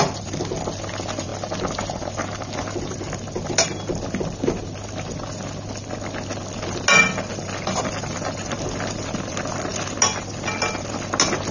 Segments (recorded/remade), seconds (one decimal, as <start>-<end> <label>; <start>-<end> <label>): 0.0-11.5 recorded